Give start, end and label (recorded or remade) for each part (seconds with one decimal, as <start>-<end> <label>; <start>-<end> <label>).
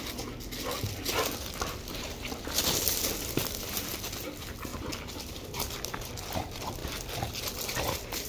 0.0-8.3 recorded